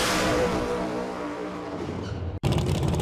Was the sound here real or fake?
fake